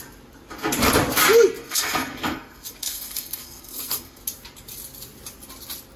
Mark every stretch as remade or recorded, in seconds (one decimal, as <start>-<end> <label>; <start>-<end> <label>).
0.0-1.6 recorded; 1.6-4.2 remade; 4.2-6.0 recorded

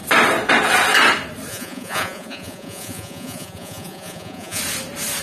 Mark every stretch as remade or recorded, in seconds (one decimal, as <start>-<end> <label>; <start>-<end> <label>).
0.0-1.5 recorded; 1.5-4.6 remade; 4.6-5.2 recorded

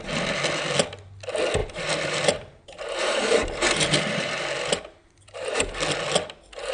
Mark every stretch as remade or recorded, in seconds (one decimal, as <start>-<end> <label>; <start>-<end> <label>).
0.0-1.6 recorded; 1.6-5.6 remade; 5.6-6.7 recorded

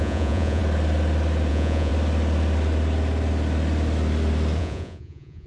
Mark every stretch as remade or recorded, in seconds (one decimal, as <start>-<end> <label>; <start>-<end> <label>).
0.0-0.6 remade; 0.6-1.5 recorded; 1.5-1.9 remade; 1.9-4.6 recorded; 4.6-5.5 remade

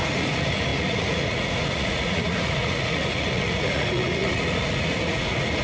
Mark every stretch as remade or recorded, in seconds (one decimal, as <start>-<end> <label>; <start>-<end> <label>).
0.0-5.6 remade